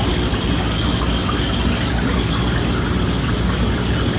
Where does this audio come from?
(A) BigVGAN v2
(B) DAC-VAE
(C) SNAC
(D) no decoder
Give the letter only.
D